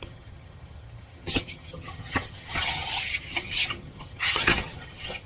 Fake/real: fake